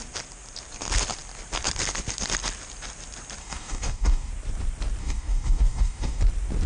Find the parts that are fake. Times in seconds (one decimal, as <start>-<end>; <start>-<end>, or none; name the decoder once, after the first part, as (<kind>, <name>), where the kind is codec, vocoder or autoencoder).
3.4-4.3 (codec, DAC); 5.0-6.2

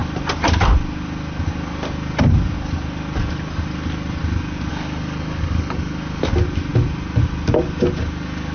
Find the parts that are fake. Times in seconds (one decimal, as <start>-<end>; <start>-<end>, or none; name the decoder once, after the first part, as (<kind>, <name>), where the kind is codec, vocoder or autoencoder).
4.7-6.2 (codec, DAC)

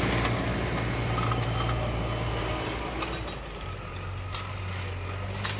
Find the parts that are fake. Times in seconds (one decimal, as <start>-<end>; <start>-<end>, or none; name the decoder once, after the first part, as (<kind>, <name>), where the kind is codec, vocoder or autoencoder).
none

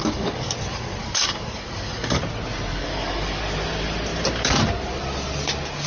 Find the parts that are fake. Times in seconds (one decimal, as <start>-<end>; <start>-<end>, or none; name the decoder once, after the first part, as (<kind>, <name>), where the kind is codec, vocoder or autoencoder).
0.0-0.5 (codec, DAC); 1.0-2.2; 2.7-3.4

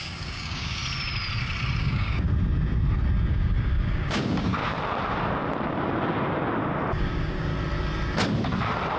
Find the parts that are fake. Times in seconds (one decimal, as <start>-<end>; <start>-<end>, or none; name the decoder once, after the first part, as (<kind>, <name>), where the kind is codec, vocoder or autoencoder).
0.0-0.8 (codec, DAC); 1.8-2.3; 3.3-4.6; 6.9-7.5